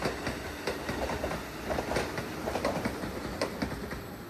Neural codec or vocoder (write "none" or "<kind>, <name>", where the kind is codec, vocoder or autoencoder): none